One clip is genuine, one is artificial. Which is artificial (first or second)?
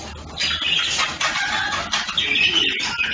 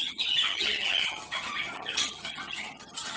second